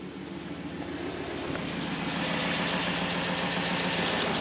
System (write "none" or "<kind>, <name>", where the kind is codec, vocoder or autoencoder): none